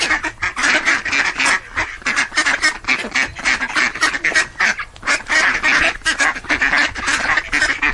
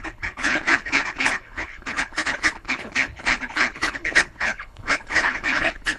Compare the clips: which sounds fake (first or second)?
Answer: second